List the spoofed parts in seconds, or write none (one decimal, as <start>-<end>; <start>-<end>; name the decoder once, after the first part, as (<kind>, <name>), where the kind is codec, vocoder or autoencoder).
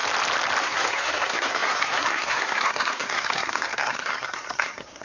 0.6-5.0 (codec, SNAC)